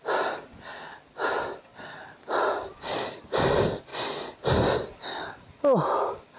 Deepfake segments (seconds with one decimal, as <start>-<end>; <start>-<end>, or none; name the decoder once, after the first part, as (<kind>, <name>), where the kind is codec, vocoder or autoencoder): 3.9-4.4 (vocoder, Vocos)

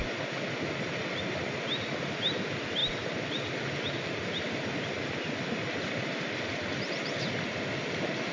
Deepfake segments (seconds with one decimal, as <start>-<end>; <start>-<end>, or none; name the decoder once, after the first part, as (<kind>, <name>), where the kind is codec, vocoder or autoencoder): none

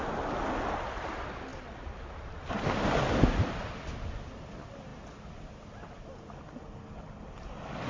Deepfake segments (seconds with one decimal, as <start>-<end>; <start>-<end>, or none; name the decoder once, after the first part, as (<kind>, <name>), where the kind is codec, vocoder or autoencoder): none